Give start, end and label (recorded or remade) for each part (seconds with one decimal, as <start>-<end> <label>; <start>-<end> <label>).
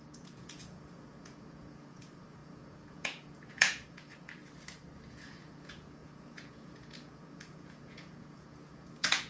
0.0-4.4 remade; 4.4-5.1 recorded; 5.1-9.3 remade